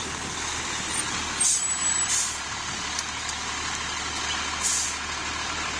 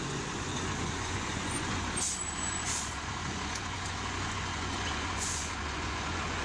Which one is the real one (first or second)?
first